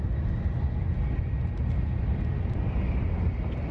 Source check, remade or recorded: recorded